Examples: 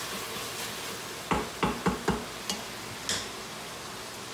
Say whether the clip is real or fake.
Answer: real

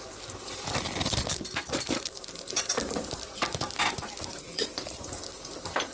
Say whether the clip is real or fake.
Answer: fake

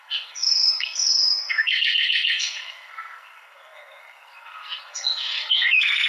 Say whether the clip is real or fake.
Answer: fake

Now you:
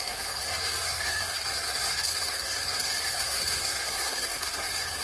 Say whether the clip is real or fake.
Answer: fake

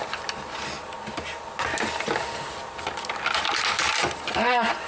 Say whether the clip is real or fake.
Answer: real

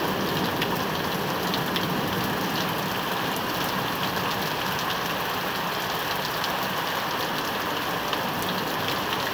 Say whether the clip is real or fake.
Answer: real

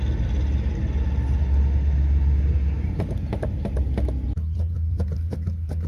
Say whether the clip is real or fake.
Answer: real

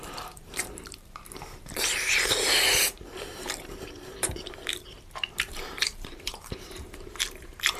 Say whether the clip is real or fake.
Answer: fake